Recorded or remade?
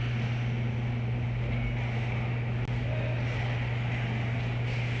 recorded